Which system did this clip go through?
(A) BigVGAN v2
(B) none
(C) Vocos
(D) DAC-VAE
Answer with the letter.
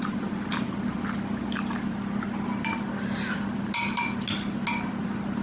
B